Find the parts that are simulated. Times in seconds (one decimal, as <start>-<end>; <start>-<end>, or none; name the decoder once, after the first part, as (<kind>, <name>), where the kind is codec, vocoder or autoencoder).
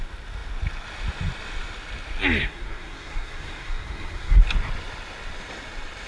2.4-4.4 (codec, SNAC)